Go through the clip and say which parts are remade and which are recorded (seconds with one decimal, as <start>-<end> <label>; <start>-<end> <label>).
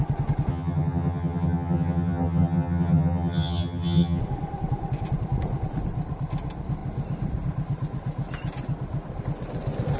0.0-0.5 recorded; 0.5-4.2 remade; 4.2-10.0 recorded